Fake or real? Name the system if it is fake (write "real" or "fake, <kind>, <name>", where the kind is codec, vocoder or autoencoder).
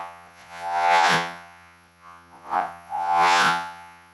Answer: fake, vocoder, Vocos